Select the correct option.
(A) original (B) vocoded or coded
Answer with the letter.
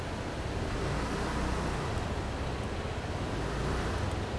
A